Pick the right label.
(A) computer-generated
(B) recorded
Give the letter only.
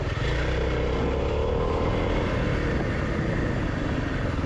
B